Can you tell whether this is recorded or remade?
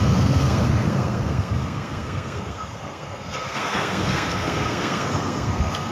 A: remade